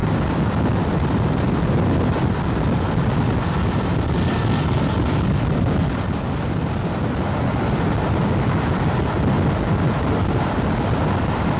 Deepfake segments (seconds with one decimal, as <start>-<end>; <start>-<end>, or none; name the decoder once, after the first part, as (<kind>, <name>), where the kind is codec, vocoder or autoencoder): none

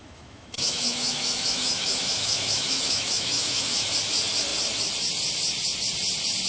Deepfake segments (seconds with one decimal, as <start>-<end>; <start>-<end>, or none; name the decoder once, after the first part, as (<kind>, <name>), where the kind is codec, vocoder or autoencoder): 0.0-3.9 (autoencoder, DAC-VAE)

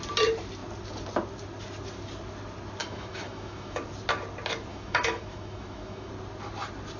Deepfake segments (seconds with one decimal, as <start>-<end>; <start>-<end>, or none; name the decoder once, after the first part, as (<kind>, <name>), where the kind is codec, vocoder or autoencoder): 2.8-3.8 (autoencoder, DAC-VAE); 4.7-6.1

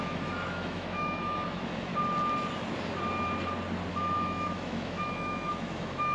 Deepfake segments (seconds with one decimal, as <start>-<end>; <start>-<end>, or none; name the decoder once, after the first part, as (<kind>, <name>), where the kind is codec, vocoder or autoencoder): 0.0-1.9 (autoencoder, DAC-VAE); 3.9-6.1